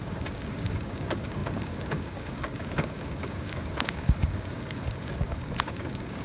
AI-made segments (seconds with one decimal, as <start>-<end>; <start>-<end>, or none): 0.0-6.2